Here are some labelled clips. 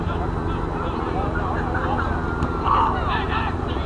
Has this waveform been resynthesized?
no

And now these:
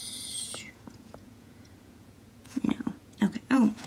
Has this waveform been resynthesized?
yes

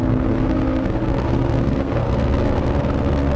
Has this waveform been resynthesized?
yes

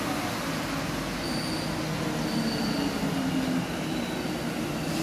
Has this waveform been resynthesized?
no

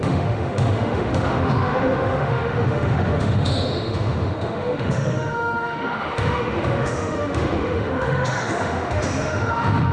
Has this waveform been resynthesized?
yes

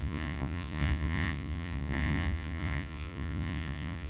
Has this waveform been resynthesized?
yes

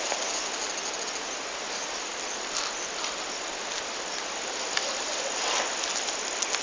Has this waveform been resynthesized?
no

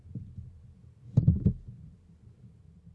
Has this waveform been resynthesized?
no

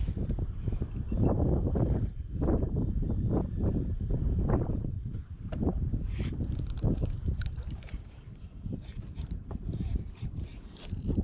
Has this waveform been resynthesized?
yes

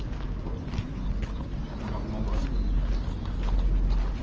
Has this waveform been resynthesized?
no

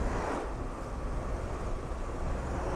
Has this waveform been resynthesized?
no